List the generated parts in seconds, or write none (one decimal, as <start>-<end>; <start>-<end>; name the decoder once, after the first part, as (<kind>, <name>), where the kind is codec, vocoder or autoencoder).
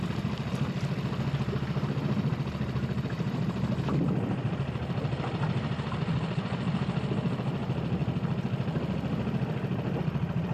none